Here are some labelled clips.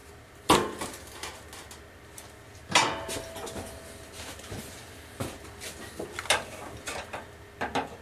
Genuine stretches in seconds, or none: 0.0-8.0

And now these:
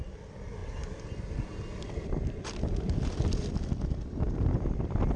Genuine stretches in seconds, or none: 0.0-5.2

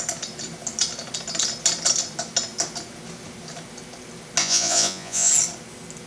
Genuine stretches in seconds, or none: 0.0-4.4; 5.3-6.1

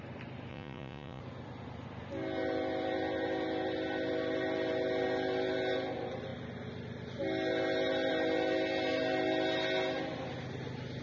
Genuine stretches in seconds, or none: 0.0-0.5; 1.2-11.0

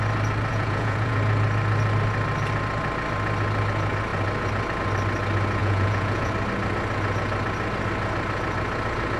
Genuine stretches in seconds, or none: 0.0-0.5; 1.2-5.6; 6.3-9.2

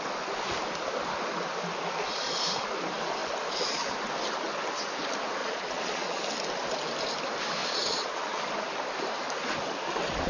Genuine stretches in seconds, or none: 0.0-5.4; 6.2-7.6; 8.4-10.3